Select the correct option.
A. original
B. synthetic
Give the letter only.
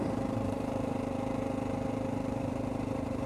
B